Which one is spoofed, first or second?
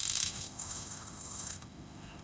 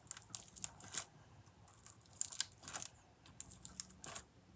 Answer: first